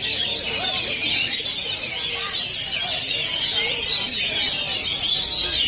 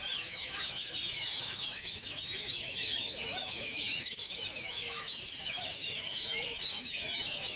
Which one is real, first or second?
first